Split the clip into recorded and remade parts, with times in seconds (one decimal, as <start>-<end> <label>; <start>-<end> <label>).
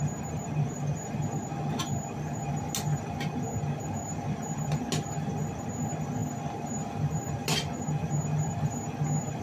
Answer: 0.0-9.4 recorded